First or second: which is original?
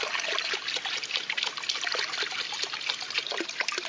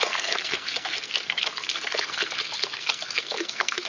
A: first